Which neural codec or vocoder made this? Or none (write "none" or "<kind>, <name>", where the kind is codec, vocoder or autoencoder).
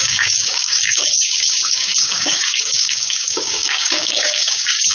codec, DAC